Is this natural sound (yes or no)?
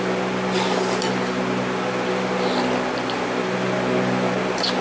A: yes